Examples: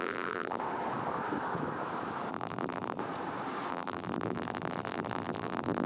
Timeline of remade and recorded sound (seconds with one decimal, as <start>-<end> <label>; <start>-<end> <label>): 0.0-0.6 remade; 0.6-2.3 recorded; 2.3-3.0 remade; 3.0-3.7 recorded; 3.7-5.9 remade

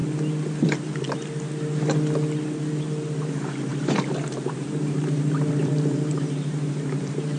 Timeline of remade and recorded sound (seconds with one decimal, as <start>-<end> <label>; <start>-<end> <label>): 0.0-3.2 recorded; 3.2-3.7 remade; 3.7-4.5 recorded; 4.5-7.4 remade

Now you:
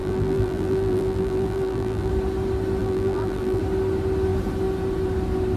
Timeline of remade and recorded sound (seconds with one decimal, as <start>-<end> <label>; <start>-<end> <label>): 0.0-2.1 remade; 2.1-2.8 recorded; 2.8-3.6 remade; 3.6-5.6 recorded

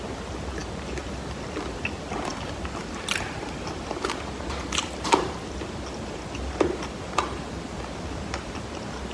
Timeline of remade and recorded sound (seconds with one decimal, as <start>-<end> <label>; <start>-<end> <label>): 0.0-2.3 recorded; 2.3-5.4 remade; 5.4-9.1 recorded

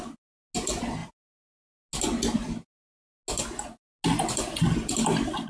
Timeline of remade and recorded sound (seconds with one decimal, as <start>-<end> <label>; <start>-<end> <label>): 0.0-5.5 recorded

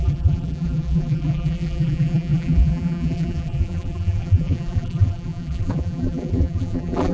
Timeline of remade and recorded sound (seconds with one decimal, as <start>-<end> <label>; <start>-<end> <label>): 0.0-7.1 remade

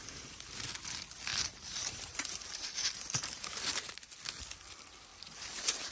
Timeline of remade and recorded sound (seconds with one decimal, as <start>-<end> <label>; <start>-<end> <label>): 0.0-1.3 recorded; 1.3-4.1 remade; 4.1-5.1 recorded; 5.1-5.9 remade

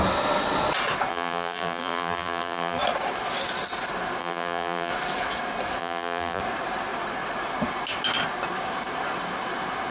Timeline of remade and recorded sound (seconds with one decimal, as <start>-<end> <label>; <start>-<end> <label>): 0.0-1.1 recorded; 1.1-2.8 remade; 2.8-4.2 recorded; 4.2-4.9 remade; 4.9-5.8 recorded; 5.8-6.4 remade; 6.4-9.9 recorded